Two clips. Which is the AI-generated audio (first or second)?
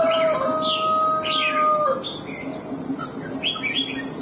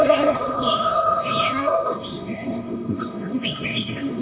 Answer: second